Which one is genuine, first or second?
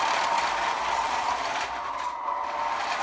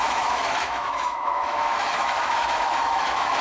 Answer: first